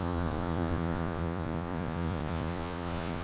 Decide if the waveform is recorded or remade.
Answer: remade